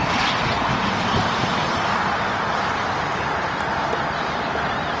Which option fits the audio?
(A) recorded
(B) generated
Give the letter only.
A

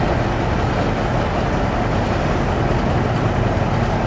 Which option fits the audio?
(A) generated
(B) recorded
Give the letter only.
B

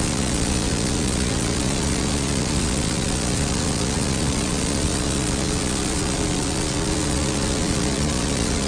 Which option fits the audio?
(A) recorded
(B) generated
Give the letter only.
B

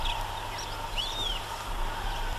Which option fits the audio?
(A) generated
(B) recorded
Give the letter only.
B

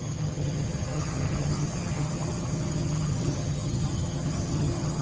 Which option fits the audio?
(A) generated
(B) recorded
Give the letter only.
A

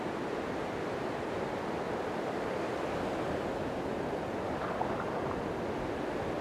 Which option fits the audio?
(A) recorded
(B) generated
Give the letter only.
A